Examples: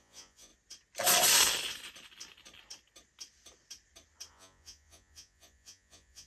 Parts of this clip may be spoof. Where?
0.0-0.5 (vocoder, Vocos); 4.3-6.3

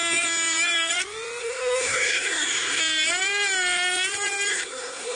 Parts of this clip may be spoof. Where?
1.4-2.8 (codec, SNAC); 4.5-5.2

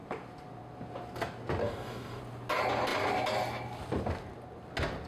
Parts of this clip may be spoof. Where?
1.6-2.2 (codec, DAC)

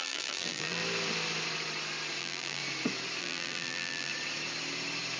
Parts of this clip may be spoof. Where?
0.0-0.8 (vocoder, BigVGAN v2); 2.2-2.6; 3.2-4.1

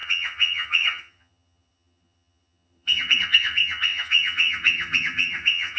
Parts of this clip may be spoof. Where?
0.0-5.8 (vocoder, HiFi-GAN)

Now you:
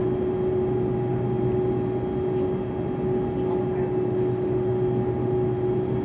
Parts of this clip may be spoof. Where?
none

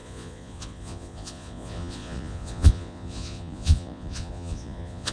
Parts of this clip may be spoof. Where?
0.0-5.1 (vocoder, Vocos)

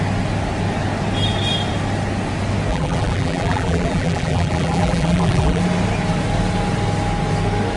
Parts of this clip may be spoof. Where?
2.7-5.6 (vocoder, BigVGAN v2)